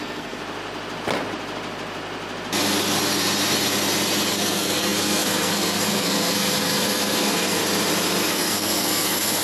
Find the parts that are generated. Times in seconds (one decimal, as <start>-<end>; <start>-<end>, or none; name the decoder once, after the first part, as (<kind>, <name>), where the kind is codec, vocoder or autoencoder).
0.0-0.4 (codec, SNAC); 4.3-7.6; 8.3-9.4